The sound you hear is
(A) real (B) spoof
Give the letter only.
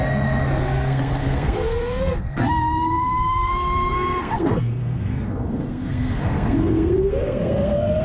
B